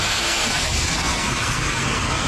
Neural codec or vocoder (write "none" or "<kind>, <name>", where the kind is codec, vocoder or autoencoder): codec, SNAC